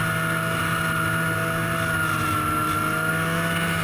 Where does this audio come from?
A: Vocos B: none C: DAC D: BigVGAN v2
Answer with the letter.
B